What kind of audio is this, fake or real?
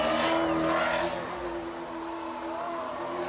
real